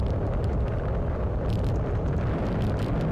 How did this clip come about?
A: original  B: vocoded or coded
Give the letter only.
B